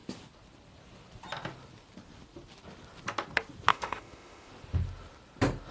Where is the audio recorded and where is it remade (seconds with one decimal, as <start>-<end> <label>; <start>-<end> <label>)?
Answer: 0.0-3.7 recorded; 3.7-4.5 remade; 4.5-5.7 recorded